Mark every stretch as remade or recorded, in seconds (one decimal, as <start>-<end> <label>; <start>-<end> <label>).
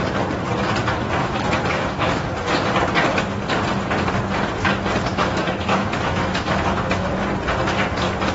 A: 0.0-1.2 recorded; 1.2-2.2 remade; 2.2-5.1 recorded; 5.1-7.1 remade; 7.1-8.3 recorded